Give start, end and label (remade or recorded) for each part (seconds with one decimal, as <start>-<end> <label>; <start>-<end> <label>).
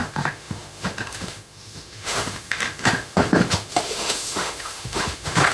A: 0.0-5.5 remade